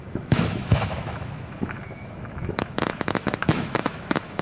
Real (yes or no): no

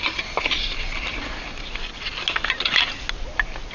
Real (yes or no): yes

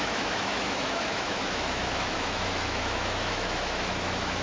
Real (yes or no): no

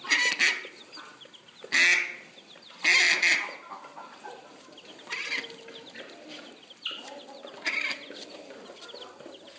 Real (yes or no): yes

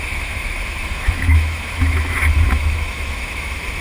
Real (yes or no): no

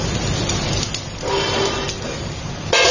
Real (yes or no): yes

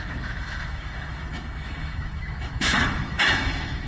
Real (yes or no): no